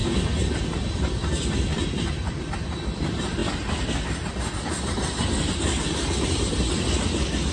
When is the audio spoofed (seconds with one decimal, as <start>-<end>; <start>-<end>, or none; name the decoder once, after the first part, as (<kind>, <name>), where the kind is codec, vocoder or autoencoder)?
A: none